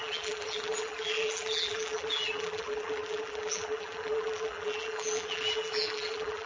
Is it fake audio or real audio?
fake